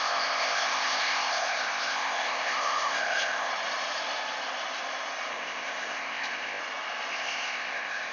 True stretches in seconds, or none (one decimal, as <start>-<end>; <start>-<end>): 3.5-5.3; 6.6-7.1

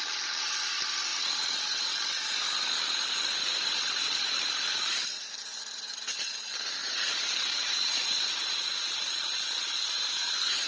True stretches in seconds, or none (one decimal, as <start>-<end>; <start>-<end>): 0.0-6.8

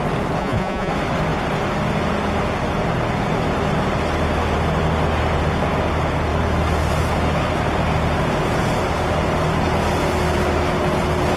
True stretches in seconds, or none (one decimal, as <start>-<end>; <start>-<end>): 0.0-0.4; 0.9-11.4

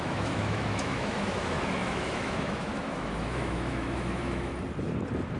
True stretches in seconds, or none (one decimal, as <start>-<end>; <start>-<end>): 4.5-5.4

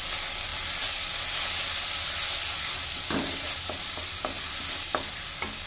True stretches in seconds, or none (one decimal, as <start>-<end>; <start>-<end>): 0.0-5.7

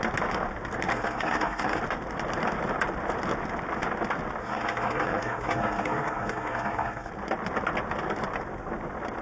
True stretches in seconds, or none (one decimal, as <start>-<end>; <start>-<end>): 0.0-0.9; 1.8-4.4; 7.1-9.2

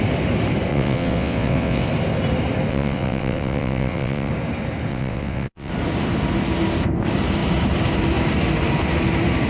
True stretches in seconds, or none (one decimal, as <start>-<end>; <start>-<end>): 0.0-0.7; 1.9-2.7; 4.3-4.9; 5.7-9.5